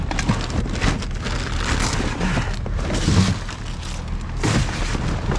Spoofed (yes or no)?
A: no